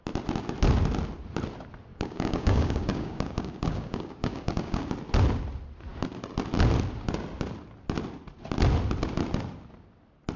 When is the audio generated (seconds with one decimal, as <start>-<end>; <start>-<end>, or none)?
1.9-4.9